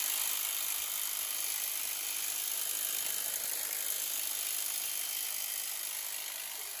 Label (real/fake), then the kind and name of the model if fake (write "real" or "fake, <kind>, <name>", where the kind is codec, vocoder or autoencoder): real